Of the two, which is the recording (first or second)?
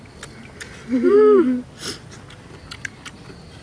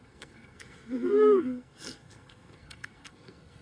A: first